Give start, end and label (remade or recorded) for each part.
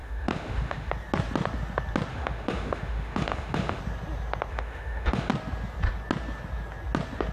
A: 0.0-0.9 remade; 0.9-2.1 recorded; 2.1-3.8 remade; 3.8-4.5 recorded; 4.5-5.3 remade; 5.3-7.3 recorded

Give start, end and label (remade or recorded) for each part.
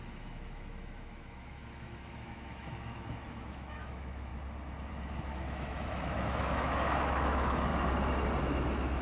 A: 0.0-4.3 remade; 4.3-4.9 recorded; 4.9-7.7 remade; 7.7-8.4 recorded; 8.4-9.0 remade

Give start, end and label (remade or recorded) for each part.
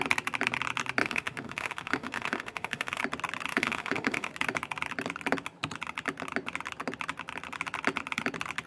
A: 0.0-1.0 recorded; 1.0-3.0 remade; 3.0-3.5 recorded; 3.5-4.3 remade; 4.3-8.7 recorded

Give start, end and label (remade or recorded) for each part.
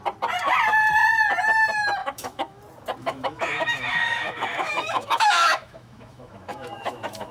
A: 0.0-2.0 recorded; 2.0-2.6 remade; 2.6-3.0 recorded; 3.0-7.3 remade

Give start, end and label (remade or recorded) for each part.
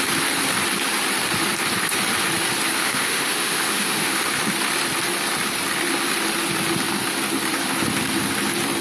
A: 0.0-2.8 recorded; 2.8-4.2 remade; 4.2-8.8 recorded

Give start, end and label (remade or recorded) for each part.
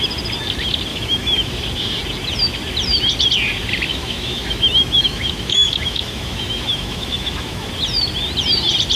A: 0.0-0.9 recorded; 0.9-1.5 remade; 1.5-3.9 recorded; 3.9-7.7 remade; 7.7-9.0 recorded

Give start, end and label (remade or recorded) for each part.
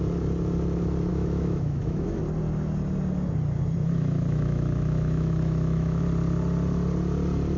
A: 0.0-1.1 recorded; 1.1-2.2 remade; 2.2-3.8 recorded; 3.8-6.0 remade; 6.0-7.6 recorded